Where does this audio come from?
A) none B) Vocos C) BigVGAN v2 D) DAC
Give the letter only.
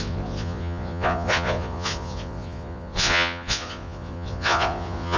B